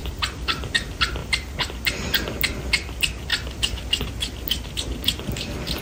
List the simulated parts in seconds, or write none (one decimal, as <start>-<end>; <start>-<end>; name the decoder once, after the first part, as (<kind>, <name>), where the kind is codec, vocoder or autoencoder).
0.0-0.7 (vocoder, BigVGAN v2); 1.2-1.7; 3.3-4.0

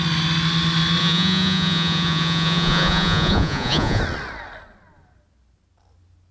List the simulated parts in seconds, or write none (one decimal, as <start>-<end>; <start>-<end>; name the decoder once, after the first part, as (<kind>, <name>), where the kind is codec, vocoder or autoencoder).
1.0-4.0 (vocoder, Vocos)

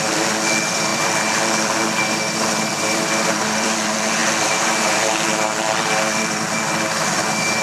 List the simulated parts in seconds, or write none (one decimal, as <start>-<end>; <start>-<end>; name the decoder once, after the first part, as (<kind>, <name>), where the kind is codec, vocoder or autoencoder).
0.0-7.6 (vocoder, BigVGAN v2)

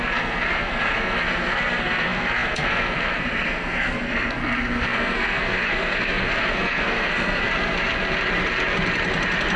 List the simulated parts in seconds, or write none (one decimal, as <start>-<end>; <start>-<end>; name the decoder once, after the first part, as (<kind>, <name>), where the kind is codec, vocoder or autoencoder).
0.0-7.5 (codec, SNAC)